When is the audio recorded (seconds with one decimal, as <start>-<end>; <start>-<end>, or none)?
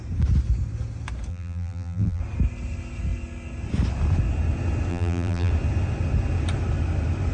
0.0-1.3; 2.2-4.9; 5.5-7.3